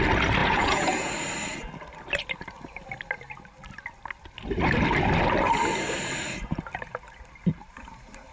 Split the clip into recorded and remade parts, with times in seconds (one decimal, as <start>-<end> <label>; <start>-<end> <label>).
0.0-0.4 recorded; 0.4-1.1 remade; 1.1-8.3 recorded

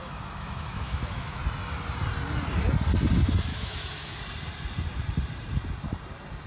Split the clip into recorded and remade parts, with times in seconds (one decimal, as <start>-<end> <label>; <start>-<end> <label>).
0.0-1.4 remade; 1.4-3.5 recorded; 3.5-4.2 remade; 4.2-6.5 recorded

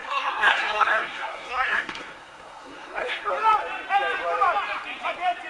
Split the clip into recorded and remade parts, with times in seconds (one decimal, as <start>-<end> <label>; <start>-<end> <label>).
0.0-3.3 remade; 3.3-5.5 recorded

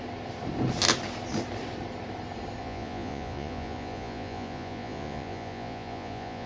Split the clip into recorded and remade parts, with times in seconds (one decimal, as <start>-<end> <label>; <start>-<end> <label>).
0.0-2.6 recorded; 2.6-6.5 remade

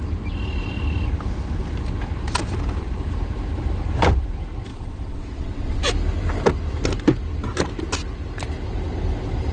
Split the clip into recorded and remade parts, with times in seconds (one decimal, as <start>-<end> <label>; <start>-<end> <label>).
0.0-4.7 recorded; 4.7-5.8 remade; 5.8-9.5 recorded